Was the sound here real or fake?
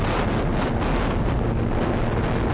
real